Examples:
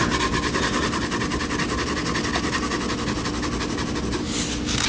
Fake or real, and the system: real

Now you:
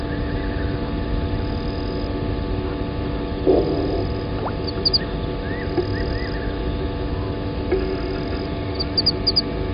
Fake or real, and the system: real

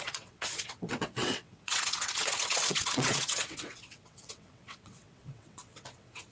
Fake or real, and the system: fake, vocoder, WaveNeXt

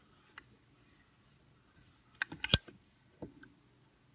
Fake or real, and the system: real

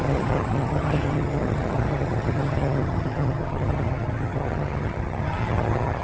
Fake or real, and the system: fake, vocoder, HiFi-GAN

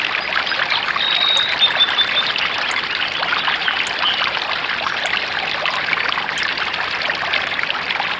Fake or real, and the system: real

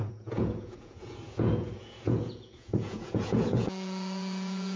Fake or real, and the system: fake, vocoder, Vocos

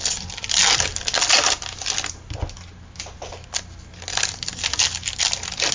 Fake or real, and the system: real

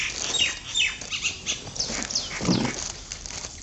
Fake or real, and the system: real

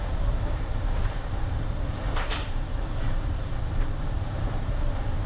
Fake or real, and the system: fake, vocoder, BigVGAN v2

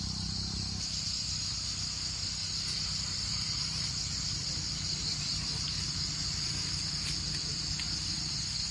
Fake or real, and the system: real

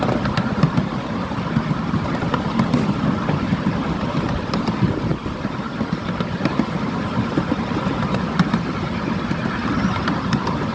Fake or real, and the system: real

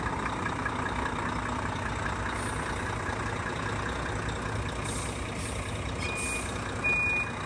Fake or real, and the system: real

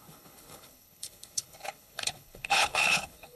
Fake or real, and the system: fake, codec, HILCodec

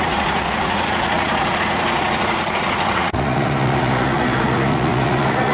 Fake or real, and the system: fake, vocoder, Vocos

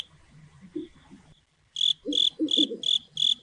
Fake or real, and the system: real